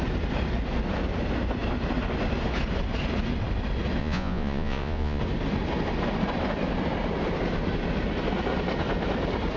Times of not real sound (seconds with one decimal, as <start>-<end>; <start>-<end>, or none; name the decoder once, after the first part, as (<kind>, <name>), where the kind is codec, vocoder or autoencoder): 4.0-5.2 (vocoder, Vocos)